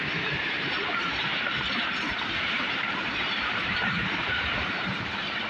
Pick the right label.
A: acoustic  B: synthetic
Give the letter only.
B